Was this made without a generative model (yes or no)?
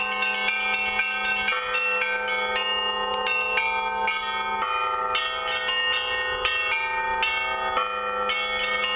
yes